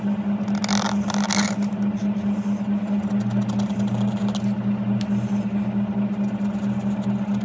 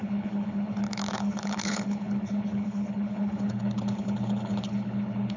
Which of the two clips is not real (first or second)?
second